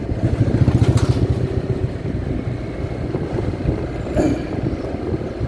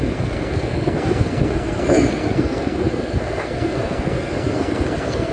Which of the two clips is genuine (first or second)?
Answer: first